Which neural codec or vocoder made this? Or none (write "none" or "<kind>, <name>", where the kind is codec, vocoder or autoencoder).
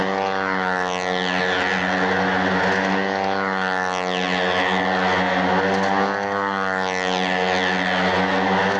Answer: none